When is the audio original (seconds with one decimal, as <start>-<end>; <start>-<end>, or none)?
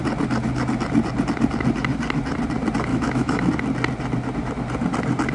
0.0-2.9; 3.5-5.3